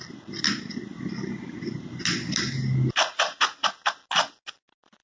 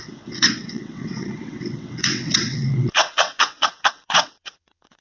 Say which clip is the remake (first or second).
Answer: second